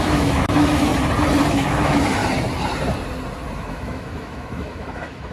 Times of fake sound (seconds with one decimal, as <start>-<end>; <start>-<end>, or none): 0.0-0.9; 1.5-2.2; 3.7-5.3